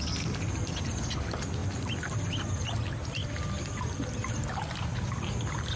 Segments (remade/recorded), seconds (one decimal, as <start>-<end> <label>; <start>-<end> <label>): 0.0-5.8 recorded